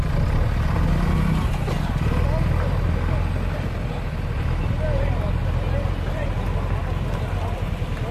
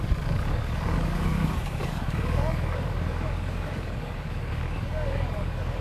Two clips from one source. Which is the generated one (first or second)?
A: second